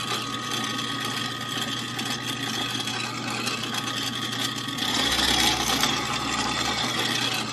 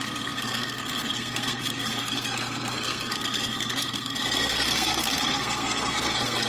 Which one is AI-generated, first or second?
second